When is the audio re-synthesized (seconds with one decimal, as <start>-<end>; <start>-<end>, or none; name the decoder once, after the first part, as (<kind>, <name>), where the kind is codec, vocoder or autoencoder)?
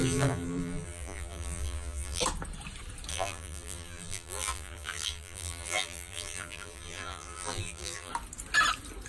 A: 0.0-2.2 (vocoder, BigVGAN v2); 3.1-8.1